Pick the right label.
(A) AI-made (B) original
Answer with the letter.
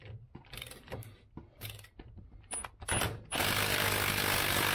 B